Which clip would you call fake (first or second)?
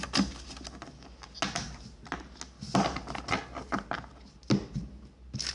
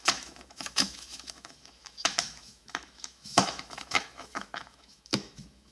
second